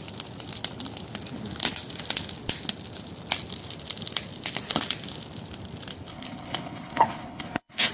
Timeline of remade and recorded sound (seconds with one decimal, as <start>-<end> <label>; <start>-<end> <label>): 0.0-6.1 recorded; 6.1-7.9 remade